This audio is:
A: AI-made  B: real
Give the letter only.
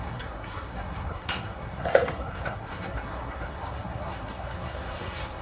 A